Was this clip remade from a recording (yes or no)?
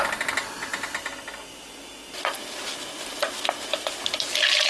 no